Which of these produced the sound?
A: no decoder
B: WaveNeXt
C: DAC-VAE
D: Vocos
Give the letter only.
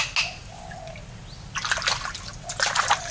A